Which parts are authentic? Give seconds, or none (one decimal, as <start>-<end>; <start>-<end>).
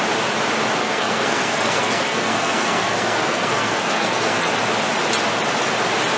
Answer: 0.0-0.8; 4.5-6.2